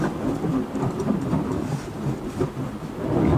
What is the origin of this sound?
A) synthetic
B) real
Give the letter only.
B